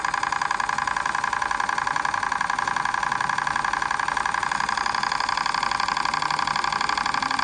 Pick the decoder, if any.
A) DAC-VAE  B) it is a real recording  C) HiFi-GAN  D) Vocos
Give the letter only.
B